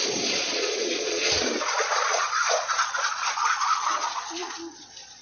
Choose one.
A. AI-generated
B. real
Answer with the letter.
A